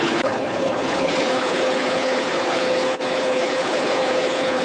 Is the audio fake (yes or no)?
yes